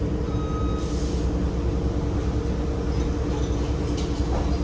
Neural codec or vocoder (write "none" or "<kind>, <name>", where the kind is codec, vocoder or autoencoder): none